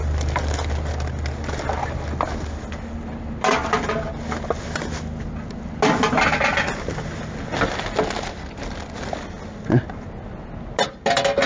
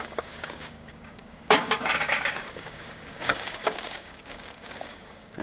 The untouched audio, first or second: first